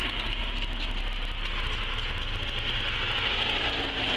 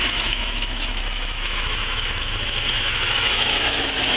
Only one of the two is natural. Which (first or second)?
first